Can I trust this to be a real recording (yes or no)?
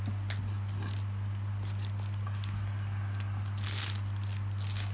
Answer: yes